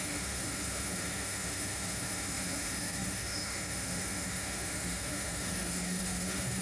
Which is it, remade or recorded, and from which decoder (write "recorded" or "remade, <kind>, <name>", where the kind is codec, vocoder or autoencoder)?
remade, autoencoder, DAC-VAE